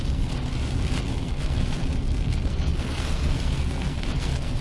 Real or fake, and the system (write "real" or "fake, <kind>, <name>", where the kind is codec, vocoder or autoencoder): fake, codec, SNAC